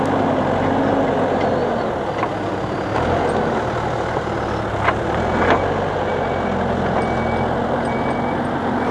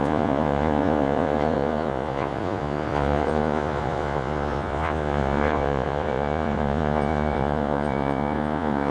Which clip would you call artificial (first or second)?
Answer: second